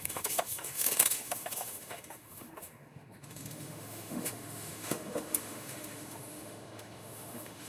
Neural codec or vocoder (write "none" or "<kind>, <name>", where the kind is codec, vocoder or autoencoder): autoencoder, DAC-VAE